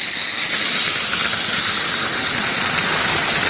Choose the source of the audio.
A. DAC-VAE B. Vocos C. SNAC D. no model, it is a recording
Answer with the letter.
D